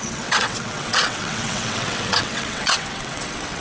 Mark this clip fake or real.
fake